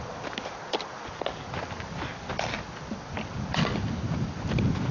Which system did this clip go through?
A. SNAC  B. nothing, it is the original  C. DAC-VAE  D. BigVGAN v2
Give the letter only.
B